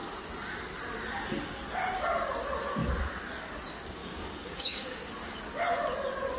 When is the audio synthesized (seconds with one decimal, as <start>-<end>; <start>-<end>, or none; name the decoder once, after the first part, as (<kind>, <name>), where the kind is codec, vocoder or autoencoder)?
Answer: 4.0-5.0 (codec, DAC)